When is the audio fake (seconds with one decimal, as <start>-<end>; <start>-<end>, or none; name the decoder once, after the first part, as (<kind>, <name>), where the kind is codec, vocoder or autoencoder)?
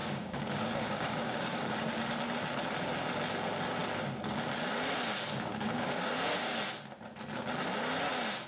0.0-1.9 (codec, DAC); 5.5-6.1